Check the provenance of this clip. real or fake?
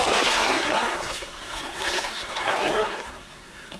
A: fake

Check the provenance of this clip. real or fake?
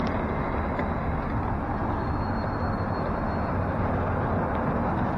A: real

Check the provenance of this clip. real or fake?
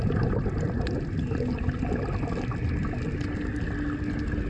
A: real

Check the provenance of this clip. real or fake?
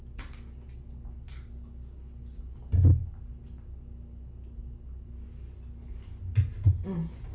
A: real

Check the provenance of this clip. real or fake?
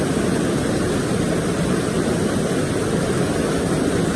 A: real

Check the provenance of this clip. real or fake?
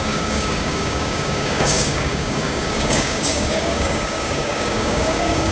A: fake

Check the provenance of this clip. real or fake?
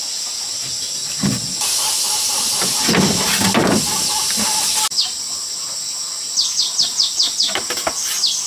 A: real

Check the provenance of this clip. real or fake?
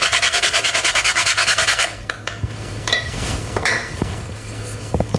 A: fake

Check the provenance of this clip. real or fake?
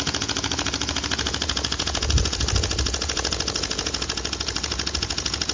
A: fake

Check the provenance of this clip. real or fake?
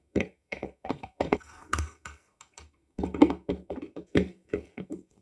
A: fake